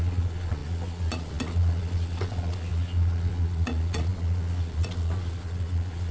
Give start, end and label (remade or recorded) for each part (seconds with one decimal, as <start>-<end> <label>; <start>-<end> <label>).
0.0-6.1 remade